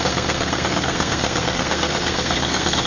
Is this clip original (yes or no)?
no